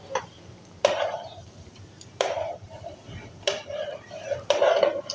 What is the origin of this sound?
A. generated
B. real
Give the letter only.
A